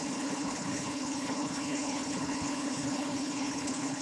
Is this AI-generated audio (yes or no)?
yes